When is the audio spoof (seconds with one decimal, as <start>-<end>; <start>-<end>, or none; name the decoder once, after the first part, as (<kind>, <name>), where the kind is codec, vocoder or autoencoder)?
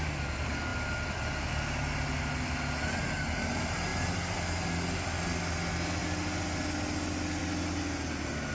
none